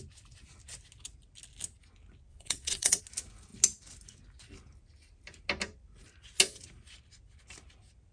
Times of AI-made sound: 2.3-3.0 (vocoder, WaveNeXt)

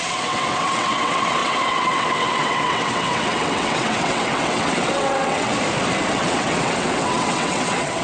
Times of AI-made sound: 0.0-5.5 (vocoder, WaveNeXt); 6.1-8.0

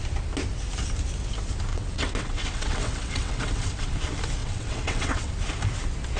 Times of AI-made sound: 1.7-3.9 (vocoder, WaveNeXt); 4.4-5.3

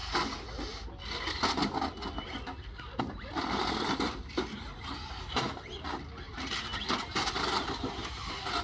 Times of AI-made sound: none

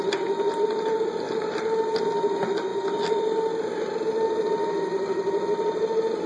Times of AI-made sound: none